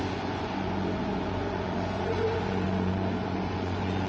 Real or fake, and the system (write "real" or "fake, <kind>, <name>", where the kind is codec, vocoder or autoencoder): fake, vocoder, Vocos